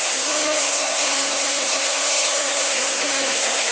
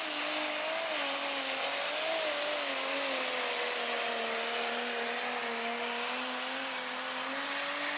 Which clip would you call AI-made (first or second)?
first